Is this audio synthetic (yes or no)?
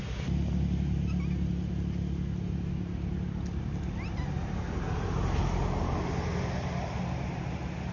no